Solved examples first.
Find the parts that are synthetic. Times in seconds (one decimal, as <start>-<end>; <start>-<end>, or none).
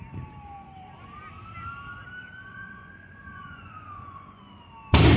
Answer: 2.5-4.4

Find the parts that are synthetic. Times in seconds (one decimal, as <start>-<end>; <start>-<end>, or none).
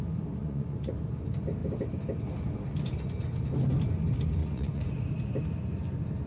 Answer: 0.4-0.9; 4.4-4.9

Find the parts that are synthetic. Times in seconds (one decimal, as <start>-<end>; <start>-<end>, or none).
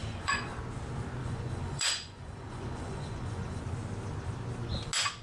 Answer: 0.0-0.5; 1.2-3.6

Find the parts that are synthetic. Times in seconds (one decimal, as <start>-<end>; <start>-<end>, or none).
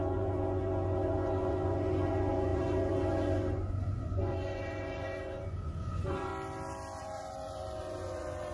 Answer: 0.0-6.3; 7.0-8.5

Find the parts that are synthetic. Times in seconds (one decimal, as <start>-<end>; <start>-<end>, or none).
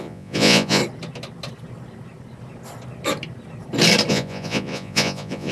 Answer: 0.0-0.8; 4.1-5.5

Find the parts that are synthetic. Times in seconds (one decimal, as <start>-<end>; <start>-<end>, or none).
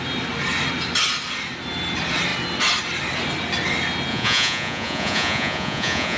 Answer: 4.1-6.2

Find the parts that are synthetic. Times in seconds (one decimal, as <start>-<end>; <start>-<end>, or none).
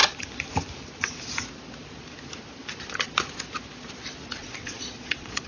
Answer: 4.4-5.5